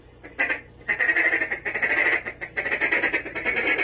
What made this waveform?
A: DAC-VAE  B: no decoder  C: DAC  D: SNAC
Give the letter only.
B